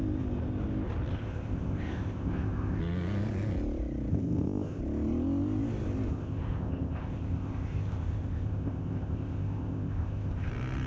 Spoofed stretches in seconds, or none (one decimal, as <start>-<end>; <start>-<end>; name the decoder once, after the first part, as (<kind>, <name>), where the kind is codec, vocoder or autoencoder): 1.1-2.8 (codec, ZipCodec); 4.1-4.8; 6.1-10.5